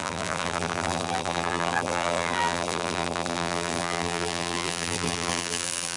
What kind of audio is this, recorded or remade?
remade